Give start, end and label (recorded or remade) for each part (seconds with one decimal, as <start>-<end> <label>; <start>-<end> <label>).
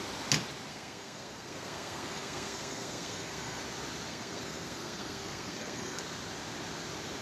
0.0-0.7 recorded; 0.7-3.6 remade; 3.6-4.1 recorded; 4.1-6.0 remade; 6.0-7.2 recorded